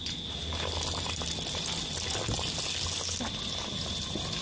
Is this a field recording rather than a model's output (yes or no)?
yes